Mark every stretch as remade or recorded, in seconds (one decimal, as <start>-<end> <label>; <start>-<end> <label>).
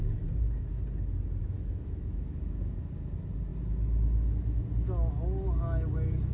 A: 0.0-1.4 recorded; 1.4-2.9 remade; 2.9-6.3 recorded